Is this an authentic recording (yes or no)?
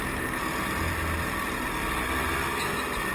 yes